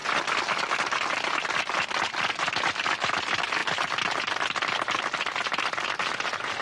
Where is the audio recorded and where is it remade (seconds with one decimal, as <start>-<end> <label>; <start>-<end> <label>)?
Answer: 0.0-6.6 recorded